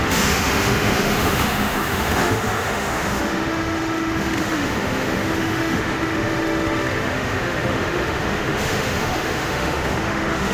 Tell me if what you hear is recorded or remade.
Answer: remade